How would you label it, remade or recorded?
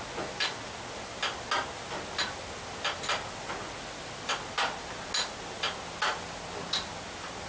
recorded